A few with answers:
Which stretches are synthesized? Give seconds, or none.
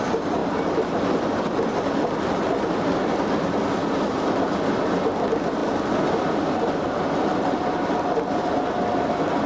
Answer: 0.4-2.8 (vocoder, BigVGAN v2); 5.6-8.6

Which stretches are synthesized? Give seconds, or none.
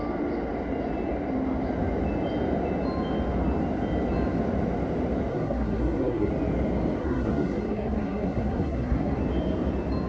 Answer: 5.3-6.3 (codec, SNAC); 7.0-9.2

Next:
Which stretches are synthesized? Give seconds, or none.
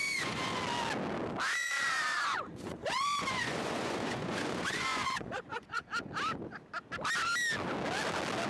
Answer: 0.0-0.6 (vocoder, Vocos); 1.6-5.9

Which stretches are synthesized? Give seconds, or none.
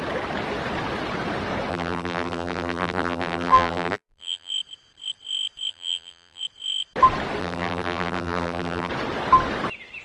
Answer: 1.7-4.5 (vocoder, BigVGAN v2); 5.7-6.4; 7.4-8.9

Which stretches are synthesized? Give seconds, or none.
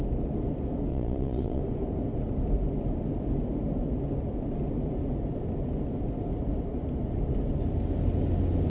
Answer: 0.9-1.6 (vocoder, Vocos)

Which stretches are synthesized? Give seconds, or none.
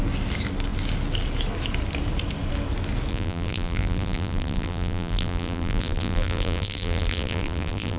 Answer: 3.1-8.0 (vocoder, BigVGAN v2)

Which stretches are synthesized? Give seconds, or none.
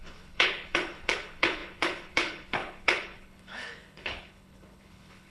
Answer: 0.0-5.3 (codec, HILCodec)